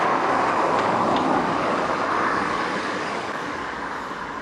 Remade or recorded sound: remade